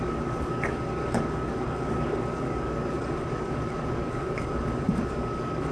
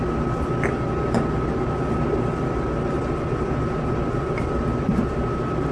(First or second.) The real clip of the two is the second